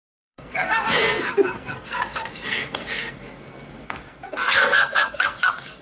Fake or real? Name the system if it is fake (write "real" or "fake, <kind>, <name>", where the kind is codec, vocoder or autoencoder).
fake, codec, SNAC